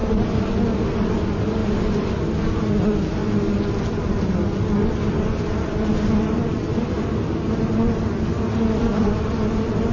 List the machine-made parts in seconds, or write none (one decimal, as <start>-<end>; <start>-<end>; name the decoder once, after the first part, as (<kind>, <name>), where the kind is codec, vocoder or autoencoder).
1.6-2.2 (vocoder, BigVGAN v2)